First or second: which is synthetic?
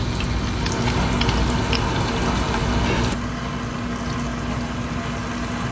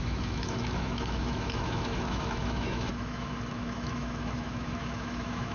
second